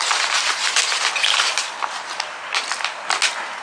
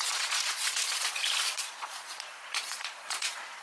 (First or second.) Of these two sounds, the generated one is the second